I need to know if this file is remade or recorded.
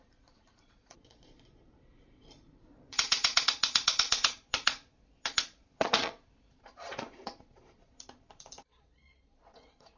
remade